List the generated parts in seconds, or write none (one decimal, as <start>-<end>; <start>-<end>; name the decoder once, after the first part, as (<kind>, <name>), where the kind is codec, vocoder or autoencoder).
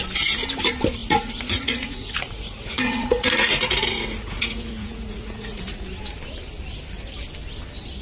1.0-5.8 (vocoder, Vocos)